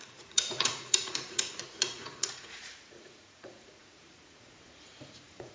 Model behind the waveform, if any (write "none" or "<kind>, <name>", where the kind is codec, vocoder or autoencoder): vocoder, Vocos